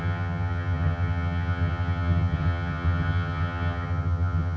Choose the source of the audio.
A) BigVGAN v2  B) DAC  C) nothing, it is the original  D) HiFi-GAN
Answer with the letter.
D